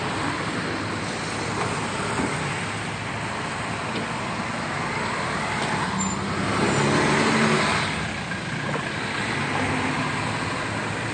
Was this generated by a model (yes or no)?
no